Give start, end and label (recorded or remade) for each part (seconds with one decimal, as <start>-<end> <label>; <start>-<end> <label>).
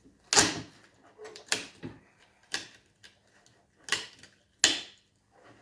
0.0-1.2 recorded; 1.2-2.4 remade; 2.4-5.6 recorded